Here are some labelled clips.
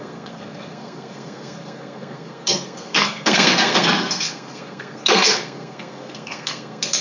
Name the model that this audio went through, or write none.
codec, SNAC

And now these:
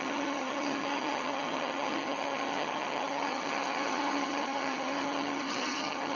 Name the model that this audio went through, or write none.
vocoder, HiFi-GAN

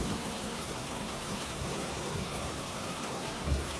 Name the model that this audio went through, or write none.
codec, SNAC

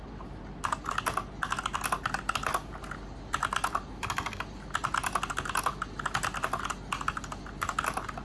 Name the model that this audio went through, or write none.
none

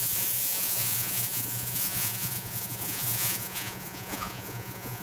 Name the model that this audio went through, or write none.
vocoder, Vocos